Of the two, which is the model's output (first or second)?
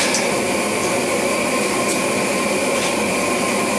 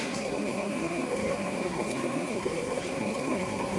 second